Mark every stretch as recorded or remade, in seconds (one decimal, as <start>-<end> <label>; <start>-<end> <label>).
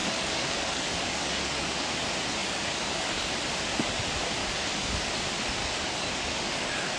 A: 0.0-1.9 remade; 1.9-2.4 recorded; 2.4-3.3 remade; 3.3-4.4 recorded; 4.4-5.0 remade; 5.0-5.6 recorded; 5.6-7.0 remade